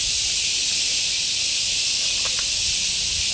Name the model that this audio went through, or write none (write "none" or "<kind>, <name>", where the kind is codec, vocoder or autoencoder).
none